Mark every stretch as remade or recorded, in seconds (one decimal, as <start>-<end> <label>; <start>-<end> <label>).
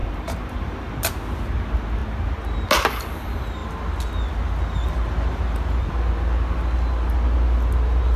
0.0-0.9 remade; 0.9-8.2 recorded